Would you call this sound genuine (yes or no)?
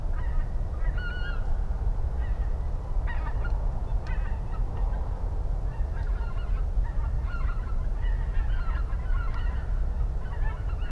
yes